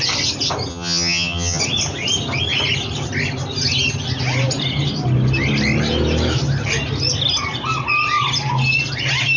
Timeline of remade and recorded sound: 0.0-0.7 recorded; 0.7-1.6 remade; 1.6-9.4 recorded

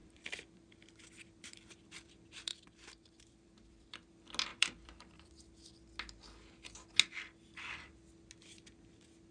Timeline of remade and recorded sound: 0.0-2.1 remade; 2.1-2.5 recorded; 2.5-4.1 remade; 4.1-4.5 recorded; 4.5-5.3 remade; 5.3-9.3 recorded

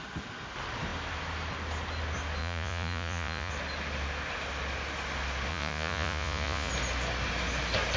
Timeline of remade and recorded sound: 0.0-2.4 recorded; 2.4-3.5 remade; 3.5-5.5 recorded; 5.5-6.7 remade; 6.7-8.0 recorded

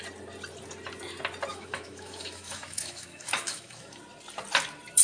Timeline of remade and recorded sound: 0.0-1.5 recorded; 1.5-4.0 remade; 4.0-5.0 recorded

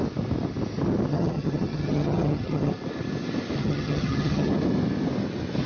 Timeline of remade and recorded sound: 0.0-1.1 recorded; 1.1-2.7 remade; 2.7-3.6 recorded; 3.6-4.5 remade; 4.5-5.7 recorded